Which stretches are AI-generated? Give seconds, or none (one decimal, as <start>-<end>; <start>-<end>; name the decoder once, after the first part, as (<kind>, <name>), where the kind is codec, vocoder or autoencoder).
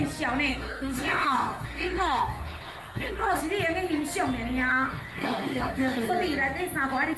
0.5-3.4 (codec, SNAC); 4.7-6.1